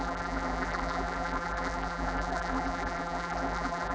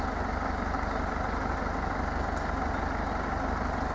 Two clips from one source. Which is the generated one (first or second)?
first